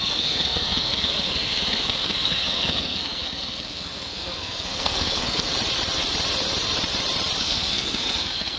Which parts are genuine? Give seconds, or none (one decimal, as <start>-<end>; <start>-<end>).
5.5-7.4